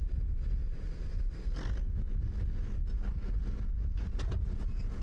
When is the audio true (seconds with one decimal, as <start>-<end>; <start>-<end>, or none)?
0.0-5.0